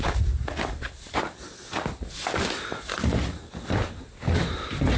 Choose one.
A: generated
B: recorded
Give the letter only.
B